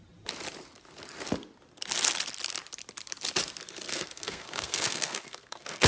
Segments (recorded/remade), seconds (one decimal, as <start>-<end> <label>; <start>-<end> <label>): 0.0-3.9 recorded; 3.9-5.9 remade